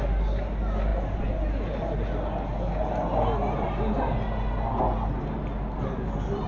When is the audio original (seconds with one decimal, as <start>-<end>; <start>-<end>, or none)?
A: 0.0-6.5